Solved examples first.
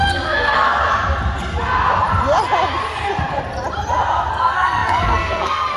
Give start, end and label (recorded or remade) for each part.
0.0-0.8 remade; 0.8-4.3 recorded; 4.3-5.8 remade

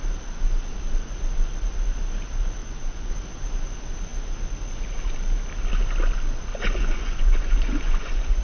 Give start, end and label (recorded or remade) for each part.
0.0-2.6 recorded; 2.6-3.1 remade; 3.1-6.5 recorded; 6.5-8.4 remade

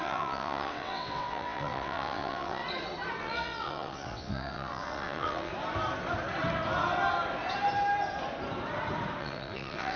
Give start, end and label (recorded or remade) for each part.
0.0-2.6 remade; 2.6-3.2 recorded; 3.2-5.5 remade; 5.5-9.2 recorded; 9.2-10.0 remade